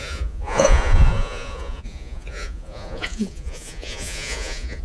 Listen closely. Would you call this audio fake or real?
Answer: fake